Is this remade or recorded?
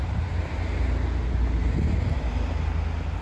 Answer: recorded